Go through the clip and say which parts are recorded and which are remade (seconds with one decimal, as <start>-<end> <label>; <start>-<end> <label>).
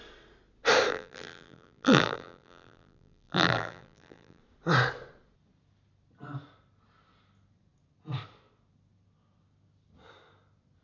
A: 0.0-0.9 recorded; 0.9-4.4 remade; 4.4-10.8 recorded